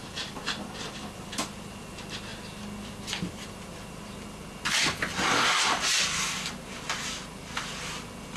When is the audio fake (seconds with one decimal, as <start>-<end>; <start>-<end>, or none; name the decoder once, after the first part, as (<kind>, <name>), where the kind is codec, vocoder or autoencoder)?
none